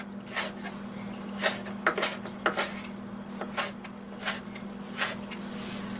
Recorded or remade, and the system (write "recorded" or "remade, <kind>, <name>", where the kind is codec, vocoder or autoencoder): recorded